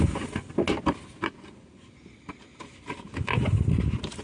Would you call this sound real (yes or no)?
yes